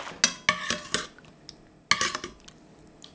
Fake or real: real